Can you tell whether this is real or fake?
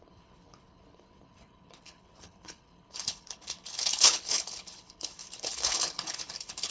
fake